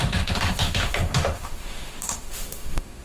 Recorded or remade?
remade